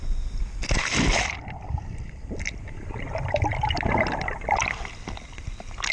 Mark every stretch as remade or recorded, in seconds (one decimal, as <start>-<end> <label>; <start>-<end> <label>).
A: 0.0-5.9 recorded